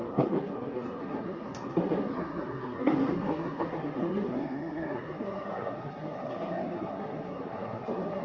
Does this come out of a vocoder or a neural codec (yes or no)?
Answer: yes